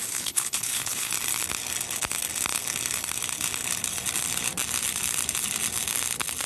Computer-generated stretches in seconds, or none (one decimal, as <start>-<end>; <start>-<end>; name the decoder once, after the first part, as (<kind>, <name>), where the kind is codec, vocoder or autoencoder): 0.0-1.1 (codec, HILCodec)